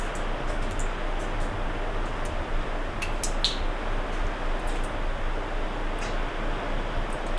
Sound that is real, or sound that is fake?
real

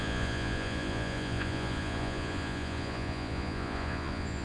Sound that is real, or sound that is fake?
fake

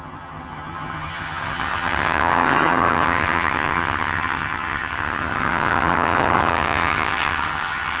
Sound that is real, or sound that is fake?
fake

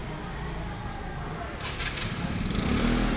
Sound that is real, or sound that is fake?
real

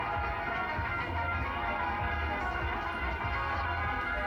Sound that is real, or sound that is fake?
real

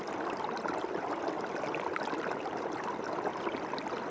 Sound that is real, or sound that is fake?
real